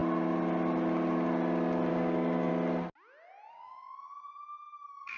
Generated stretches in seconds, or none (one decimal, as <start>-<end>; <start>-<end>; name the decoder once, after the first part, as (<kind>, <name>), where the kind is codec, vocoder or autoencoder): 1.9-2.5 (codec, DAC); 3.5-5.2